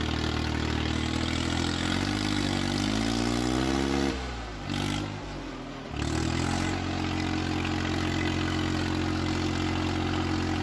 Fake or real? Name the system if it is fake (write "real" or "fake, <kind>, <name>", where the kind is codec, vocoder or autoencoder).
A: real